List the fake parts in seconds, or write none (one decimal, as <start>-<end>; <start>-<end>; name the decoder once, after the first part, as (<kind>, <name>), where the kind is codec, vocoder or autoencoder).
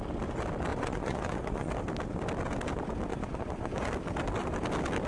0.7-1.7 (vocoder, Vocos); 3.1-3.9